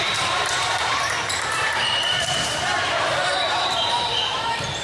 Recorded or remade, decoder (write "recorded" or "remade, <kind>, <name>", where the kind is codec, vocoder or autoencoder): remade, vocoder, BigVGAN v2